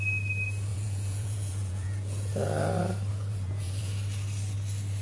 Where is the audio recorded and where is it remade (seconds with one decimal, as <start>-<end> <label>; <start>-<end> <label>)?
0.0-0.7 recorded; 0.7-2.3 remade; 2.3-3.1 recorded; 3.1-3.9 remade; 3.9-5.0 recorded